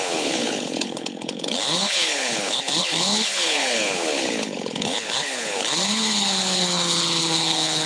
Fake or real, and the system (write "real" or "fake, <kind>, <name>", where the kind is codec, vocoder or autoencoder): fake, codec, HILCodec